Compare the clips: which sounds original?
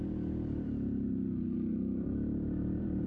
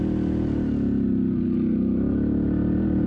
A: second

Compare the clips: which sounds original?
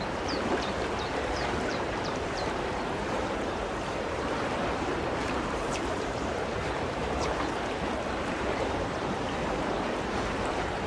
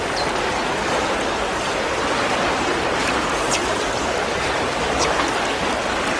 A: second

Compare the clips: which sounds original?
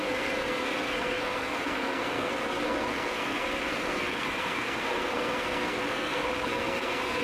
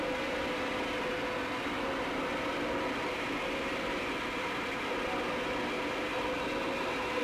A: second